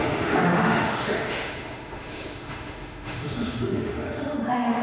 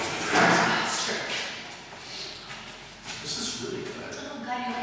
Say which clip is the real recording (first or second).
second